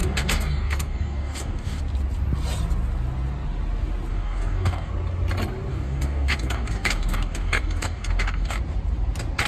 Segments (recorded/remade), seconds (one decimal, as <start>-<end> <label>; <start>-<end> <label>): 0.0-1.8 remade; 1.8-4.1 recorded; 4.1-4.9 remade; 4.9-5.7 recorded; 5.7-8.6 remade; 8.6-9.5 recorded